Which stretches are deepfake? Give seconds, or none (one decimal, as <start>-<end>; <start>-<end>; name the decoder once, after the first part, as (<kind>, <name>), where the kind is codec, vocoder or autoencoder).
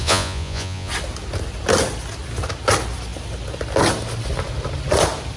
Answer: 0.0-0.9 (vocoder, Vocos)